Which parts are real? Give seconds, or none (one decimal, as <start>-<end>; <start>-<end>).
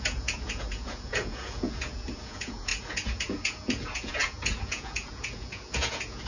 none